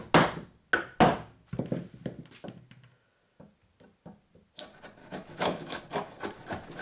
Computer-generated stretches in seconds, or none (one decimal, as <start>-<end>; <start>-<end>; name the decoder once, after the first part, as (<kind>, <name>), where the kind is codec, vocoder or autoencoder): 5.0-5.8 (autoencoder, DAC-VAE)